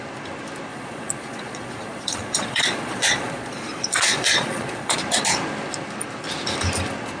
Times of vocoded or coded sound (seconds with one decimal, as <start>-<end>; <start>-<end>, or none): 0.7-5.0